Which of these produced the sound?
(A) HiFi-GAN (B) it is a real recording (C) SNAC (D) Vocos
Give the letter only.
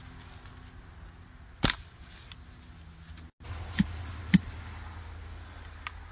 B